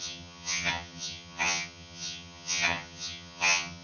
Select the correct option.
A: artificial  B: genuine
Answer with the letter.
A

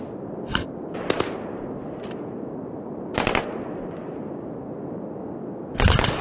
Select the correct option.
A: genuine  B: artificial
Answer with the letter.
A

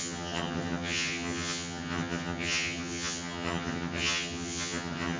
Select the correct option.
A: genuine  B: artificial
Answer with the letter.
B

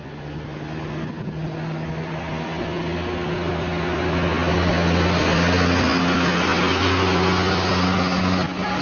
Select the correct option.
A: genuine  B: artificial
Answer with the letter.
A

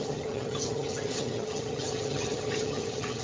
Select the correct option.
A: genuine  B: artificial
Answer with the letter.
B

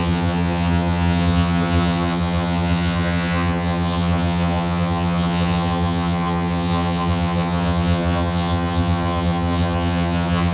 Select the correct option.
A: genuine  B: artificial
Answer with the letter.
B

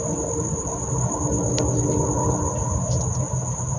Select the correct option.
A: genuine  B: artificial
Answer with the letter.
A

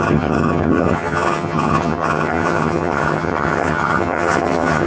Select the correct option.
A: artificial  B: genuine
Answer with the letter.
A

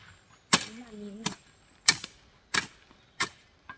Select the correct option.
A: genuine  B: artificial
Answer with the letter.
A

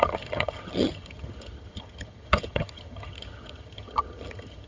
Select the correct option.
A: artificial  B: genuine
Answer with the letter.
A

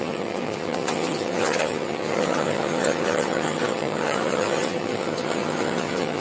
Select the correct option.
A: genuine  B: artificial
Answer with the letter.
B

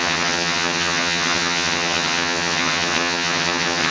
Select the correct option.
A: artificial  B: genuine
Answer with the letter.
A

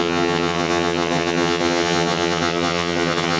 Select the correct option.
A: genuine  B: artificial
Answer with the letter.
B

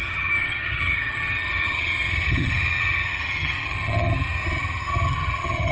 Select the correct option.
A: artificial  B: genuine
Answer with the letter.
A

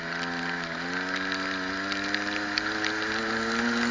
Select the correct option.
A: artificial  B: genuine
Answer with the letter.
B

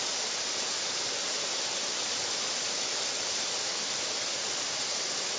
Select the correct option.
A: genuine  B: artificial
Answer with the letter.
A